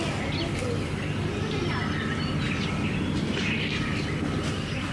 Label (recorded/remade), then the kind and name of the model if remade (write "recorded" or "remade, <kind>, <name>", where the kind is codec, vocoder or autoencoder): recorded